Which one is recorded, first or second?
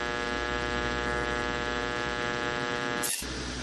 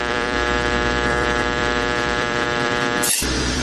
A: first